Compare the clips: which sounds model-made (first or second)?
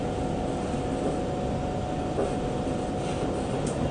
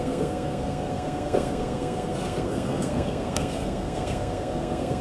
second